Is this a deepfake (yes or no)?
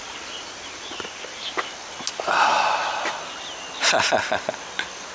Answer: no